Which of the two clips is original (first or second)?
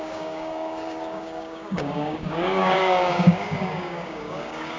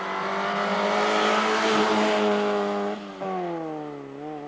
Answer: second